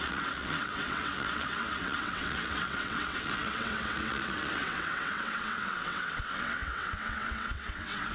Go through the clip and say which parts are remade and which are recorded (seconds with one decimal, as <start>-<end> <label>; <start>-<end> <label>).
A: 0.0-8.1 remade